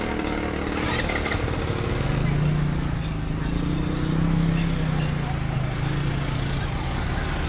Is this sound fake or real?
real